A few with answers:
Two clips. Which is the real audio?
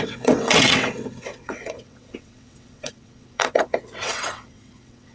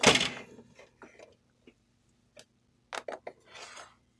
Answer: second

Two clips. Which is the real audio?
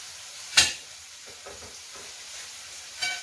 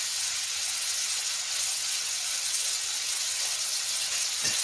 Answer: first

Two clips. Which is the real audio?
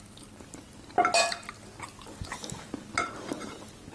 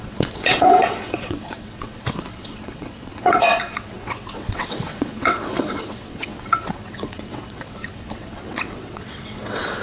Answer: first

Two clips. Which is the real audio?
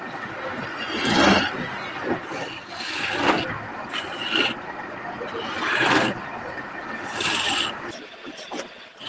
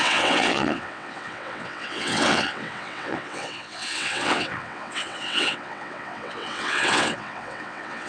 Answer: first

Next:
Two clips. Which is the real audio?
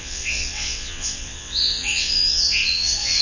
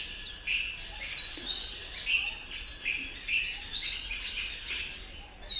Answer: second